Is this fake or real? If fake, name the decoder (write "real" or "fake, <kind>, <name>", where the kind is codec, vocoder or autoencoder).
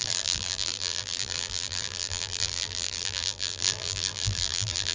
fake, vocoder, BigVGAN v2